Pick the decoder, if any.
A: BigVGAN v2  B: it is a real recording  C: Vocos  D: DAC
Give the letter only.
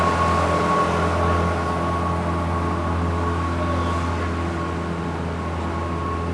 B